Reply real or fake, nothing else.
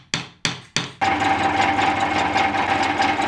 real